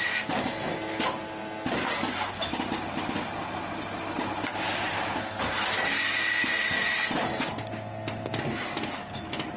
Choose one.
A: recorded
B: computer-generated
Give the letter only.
A